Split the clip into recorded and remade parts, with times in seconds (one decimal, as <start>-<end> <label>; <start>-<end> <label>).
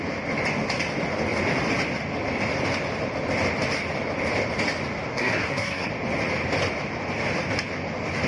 0.0-5.1 recorded; 5.1-5.9 remade; 5.9-8.3 recorded